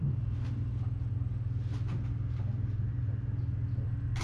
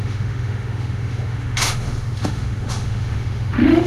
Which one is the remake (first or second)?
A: second